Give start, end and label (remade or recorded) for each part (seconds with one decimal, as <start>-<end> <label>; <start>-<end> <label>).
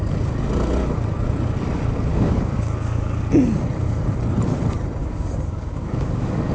0.0-2.1 recorded; 2.1-3.2 remade; 3.2-5.0 recorded; 5.0-6.5 remade